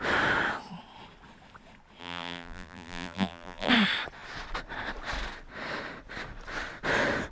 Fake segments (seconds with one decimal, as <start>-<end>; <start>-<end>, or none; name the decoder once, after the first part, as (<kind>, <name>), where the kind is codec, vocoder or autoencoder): 2.0-3.7 (vocoder, BigVGAN v2)